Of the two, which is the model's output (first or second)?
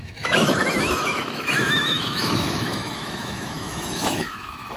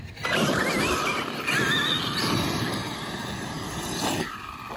first